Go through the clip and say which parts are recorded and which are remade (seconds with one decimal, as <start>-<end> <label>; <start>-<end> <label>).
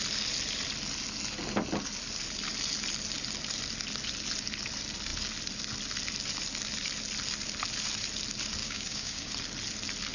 0.0-8.6 recorded; 8.6-9.3 remade; 9.3-10.1 recorded